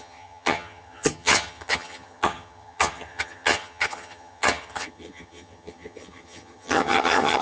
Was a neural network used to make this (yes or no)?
yes